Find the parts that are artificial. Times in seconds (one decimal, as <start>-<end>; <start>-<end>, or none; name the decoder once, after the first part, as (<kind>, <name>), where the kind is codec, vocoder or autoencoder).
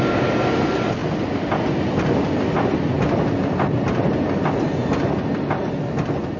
none